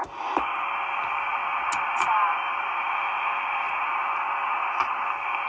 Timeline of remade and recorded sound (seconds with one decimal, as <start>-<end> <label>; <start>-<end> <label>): 0.0-5.5 recorded